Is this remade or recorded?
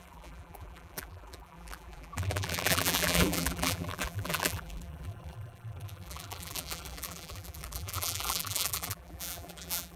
remade